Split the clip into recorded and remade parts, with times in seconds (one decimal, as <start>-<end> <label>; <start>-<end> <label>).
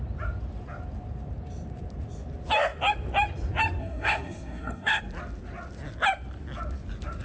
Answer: 0.0-3.8 recorded; 3.8-5.0 remade; 5.0-7.2 recorded